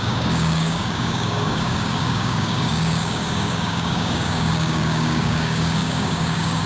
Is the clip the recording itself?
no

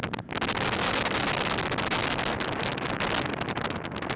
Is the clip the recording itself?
yes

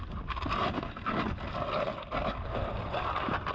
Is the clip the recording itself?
yes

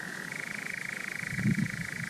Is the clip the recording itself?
no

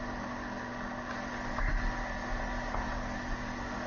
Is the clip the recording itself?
yes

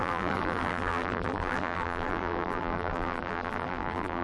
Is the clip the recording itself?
no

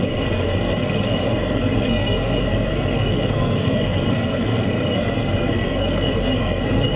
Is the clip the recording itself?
no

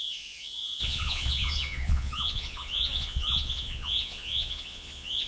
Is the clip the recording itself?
no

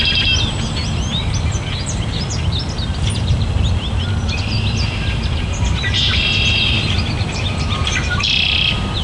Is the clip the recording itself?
yes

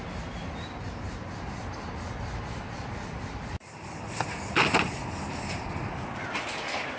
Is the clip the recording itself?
yes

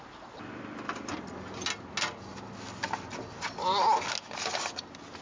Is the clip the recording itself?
yes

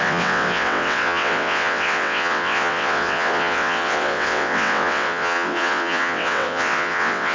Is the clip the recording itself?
no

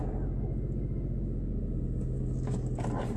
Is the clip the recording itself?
yes